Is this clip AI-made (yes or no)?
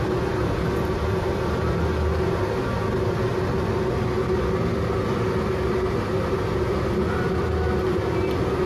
no